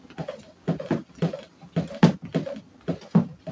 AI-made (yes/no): no